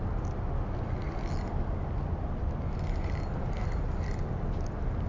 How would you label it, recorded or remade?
recorded